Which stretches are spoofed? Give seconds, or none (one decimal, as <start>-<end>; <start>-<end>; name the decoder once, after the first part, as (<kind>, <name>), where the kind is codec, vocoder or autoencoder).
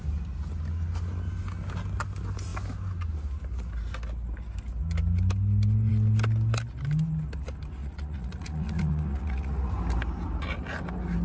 7.8-9.7 (vocoder, Vocos)